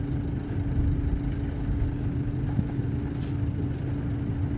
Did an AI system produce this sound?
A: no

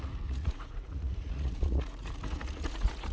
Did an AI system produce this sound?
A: yes